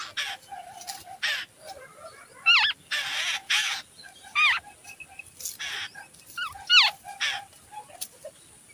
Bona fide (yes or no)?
yes